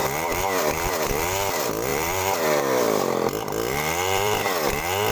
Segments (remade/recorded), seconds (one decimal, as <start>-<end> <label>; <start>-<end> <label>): 0.0-1.9 recorded; 1.9-4.4 remade; 4.4-5.1 recorded

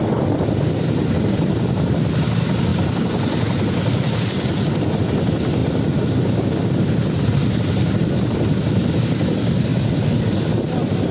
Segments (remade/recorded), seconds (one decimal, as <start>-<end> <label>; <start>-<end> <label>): 0.0-2.7 recorded; 2.7-5.0 remade; 5.0-5.6 recorded; 5.6-6.2 remade; 6.2-11.1 recorded

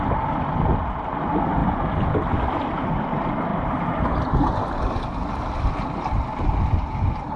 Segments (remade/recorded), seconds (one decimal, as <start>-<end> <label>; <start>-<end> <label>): 0.0-7.4 recorded

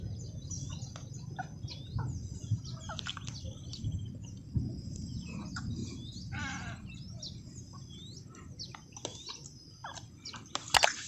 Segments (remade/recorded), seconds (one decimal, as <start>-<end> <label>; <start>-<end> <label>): 0.0-9.8 recorded; 9.8-10.3 remade; 10.3-11.1 recorded

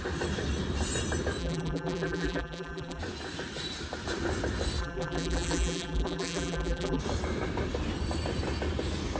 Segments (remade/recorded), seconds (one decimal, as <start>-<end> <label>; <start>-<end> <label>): 0.0-1.4 recorded; 1.4-3.0 remade; 3.0-4.8 recorded; 4.8-7.0 remade; 7.0-9.2 recorded

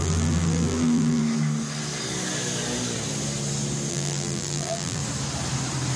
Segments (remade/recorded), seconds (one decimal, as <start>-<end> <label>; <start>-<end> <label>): 0.0-1.2 remade; 1.2-3.9 recorded; 3.9-5.0 remade; 5.0-6.0 recorded

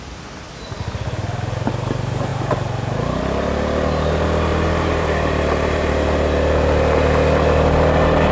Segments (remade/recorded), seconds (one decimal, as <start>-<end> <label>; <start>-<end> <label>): 0.0-2.3 recorded; 2.3-3.2 remade; 3.2-4.5 recorded; 4.5-5.9 remade; 5.9-8.3 recorded

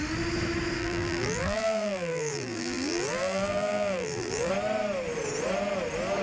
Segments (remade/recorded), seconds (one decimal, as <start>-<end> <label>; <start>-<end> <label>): 0.0-0.8 recorded; 0.8-4.5 remade; 4.5-6.2 recorded